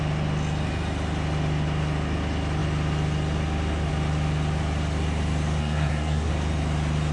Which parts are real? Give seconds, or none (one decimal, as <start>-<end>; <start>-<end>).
0.0-5.6; 6.3-7.1

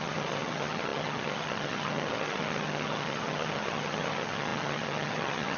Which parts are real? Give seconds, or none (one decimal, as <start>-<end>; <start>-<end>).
none

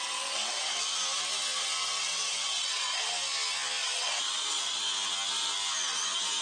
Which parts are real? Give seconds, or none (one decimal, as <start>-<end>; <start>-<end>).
0.8-1.8; 3.0-3.8; 4.8-6.4

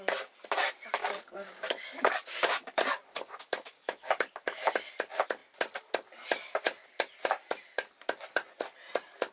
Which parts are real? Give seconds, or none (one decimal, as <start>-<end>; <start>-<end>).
0.0-1.0; 4.9-9.3

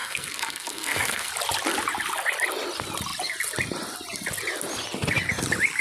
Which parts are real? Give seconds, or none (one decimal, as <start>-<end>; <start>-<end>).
1.3-5.8

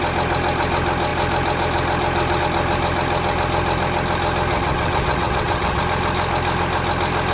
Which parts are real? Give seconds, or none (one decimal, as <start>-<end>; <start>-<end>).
0.0-4.5; 5.8-7.3

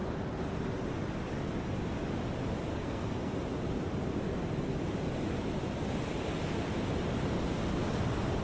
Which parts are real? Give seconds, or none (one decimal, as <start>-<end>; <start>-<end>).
0.0-2.7; 3.3-8.4

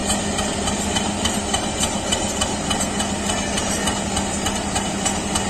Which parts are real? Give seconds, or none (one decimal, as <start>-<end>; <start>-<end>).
0.0-5.5